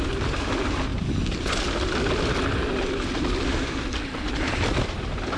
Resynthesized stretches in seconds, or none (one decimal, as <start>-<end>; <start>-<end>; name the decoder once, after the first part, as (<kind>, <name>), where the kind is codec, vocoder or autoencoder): none